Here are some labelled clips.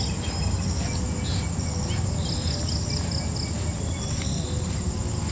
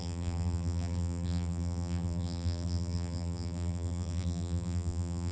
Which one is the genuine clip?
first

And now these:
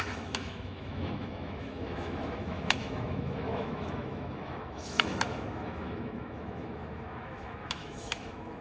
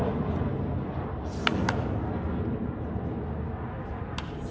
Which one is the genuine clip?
second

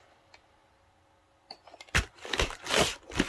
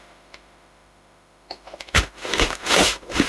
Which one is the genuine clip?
first